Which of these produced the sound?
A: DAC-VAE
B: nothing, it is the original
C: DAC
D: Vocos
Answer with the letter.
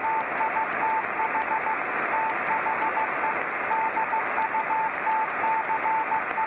B